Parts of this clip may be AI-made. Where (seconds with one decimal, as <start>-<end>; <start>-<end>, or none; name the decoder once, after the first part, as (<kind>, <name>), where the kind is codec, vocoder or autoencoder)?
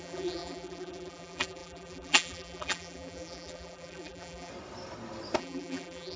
0.0-4.5 (vocoder, BigVGAN v2); 5.4-6.2